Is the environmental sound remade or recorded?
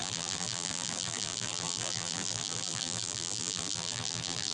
remade